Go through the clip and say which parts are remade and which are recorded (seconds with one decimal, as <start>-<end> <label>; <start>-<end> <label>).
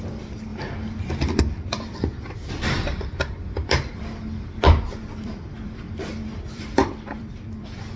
0.0-0.5 remade; 0.5-1.4 recorded; 1.4-2.1 remade; 2.1-4.9 recorded; 4.9-8.0 remade